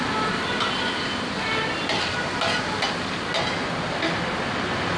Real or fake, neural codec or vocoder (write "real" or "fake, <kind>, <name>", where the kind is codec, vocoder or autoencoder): real